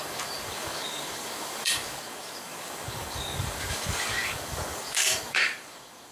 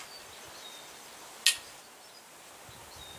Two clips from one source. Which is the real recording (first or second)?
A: second